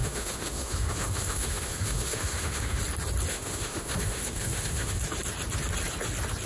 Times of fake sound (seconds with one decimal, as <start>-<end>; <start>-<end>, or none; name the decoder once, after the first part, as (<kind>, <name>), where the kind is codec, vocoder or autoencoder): 0.0-2.8 (autoencoder, DAC-VAE); 3.3-5.0